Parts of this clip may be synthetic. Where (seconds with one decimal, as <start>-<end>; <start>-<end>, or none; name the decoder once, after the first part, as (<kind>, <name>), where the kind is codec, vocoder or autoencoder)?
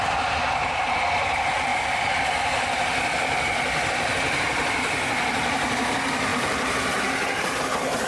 6.3-8.1 (vocoder, BigVGAN v2)